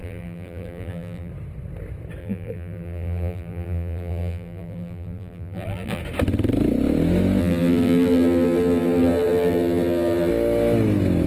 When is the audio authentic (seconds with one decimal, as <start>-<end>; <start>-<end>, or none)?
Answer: 1.3-2.2; 6.0-7.4; 10.3-11.3